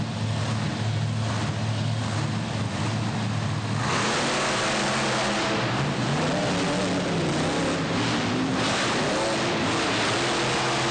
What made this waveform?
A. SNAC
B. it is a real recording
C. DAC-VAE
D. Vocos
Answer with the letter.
B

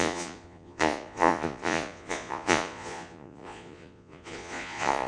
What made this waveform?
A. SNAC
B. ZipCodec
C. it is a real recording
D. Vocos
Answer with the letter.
D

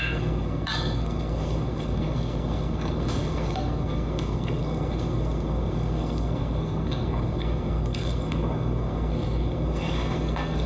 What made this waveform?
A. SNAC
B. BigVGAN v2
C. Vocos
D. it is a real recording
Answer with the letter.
A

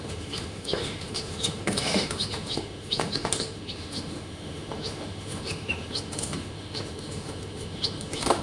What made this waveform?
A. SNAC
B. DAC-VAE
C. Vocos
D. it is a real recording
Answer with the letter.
B